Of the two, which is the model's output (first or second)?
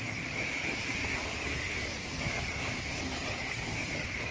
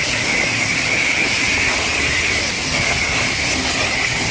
first